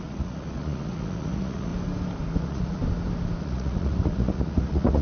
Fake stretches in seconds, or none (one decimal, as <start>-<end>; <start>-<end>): 0.0-1.7; 2.4-2.8; 3.4-5.0